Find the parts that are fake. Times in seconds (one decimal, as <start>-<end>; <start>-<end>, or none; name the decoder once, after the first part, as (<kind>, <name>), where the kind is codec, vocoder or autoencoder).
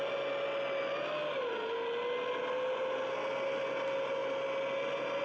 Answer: none